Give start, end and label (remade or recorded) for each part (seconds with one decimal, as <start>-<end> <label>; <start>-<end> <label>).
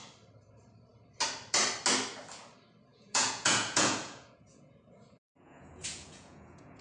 0.0-2.9 recorded; 2.9-6.8 remade